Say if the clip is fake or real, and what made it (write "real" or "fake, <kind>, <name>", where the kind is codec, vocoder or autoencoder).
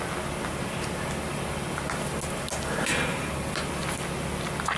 real